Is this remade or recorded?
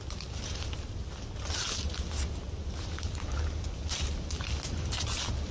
recorded